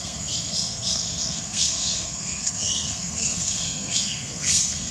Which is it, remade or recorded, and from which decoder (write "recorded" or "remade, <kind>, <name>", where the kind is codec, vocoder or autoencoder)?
remade, codec, SNAC